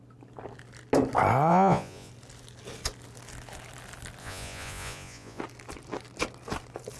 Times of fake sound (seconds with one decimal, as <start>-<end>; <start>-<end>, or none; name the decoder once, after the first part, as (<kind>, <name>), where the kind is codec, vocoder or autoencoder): 1.5-2.1 (vocoder, Vocos); 4.2-5.4

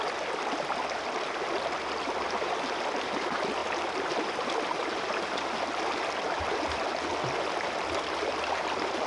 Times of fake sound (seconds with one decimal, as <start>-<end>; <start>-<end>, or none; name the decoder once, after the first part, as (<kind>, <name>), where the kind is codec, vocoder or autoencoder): none